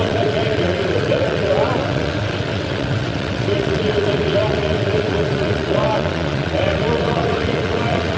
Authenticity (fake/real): fake